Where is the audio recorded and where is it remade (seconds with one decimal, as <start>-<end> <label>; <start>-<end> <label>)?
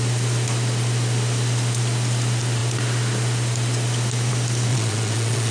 0.0-4.7 recorded; 4.7-5.5 remade